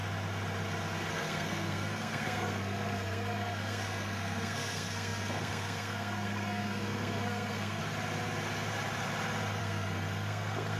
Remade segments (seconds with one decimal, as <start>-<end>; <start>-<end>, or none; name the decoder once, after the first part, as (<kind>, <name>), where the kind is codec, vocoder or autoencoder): 1.1-7.8 (codec, SNAC); 9.6-10.8